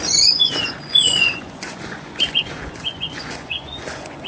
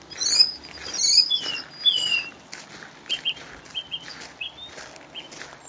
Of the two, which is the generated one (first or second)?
first